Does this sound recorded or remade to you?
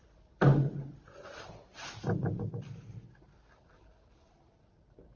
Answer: recorded